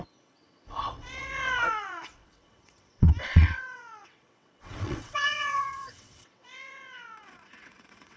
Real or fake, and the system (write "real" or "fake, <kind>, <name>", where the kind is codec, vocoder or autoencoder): fake, vocoder, WaveNeXt